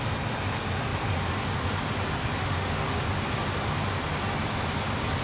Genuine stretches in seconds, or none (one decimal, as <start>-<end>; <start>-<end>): 0.0-2.4; 2.9-5.2